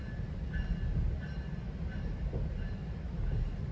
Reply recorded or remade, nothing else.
recorded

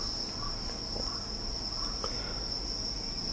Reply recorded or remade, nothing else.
recorded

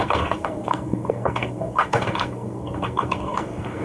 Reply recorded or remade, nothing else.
remade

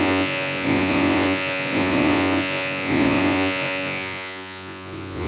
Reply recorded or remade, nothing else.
remade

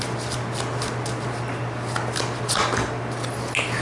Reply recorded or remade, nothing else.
recorded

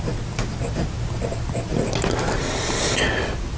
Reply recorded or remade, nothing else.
recorded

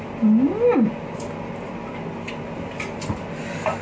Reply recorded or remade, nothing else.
recorded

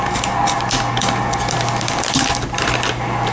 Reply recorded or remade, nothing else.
remade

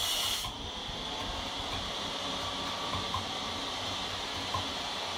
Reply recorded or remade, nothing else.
recorded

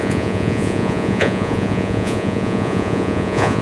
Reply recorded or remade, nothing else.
remade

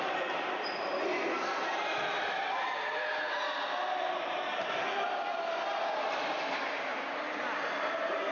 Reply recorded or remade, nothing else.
recorded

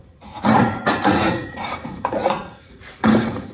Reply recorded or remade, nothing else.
remade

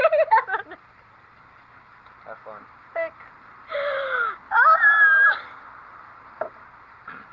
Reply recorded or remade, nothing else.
recorded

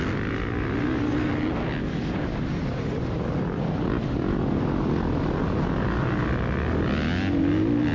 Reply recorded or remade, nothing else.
recorded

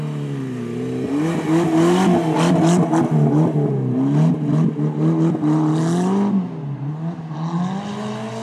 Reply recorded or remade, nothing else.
recorded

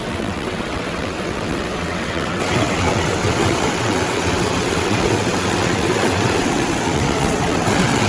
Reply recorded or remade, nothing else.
remade